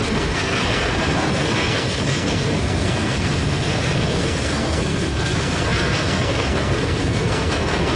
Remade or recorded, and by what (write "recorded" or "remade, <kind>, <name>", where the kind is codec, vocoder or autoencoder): remade, codec, SNAC